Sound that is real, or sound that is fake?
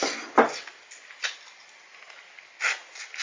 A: real